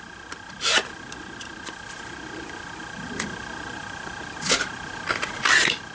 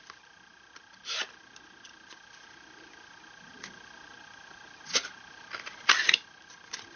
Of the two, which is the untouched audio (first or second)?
second